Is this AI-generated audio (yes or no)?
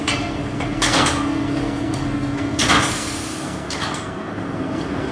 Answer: yes